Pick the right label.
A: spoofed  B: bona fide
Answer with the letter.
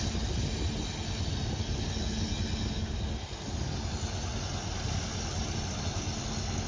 B